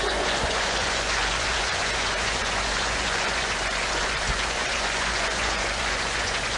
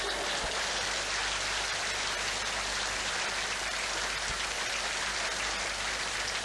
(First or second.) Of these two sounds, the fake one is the first